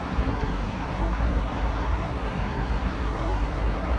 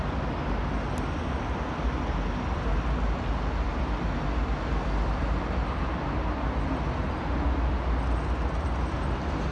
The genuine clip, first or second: second